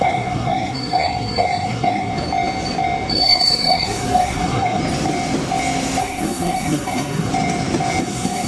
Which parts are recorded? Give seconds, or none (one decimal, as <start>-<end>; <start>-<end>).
2.1-3.1; 4.8-6.0; 7.3-8.0